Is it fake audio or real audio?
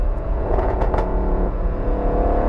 fake